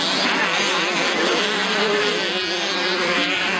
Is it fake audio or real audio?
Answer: real